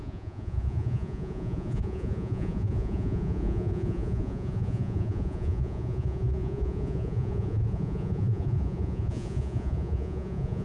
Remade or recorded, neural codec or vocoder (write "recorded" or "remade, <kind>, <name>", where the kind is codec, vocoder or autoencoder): remade, vocoder, Vocos